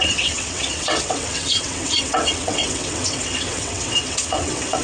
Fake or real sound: fake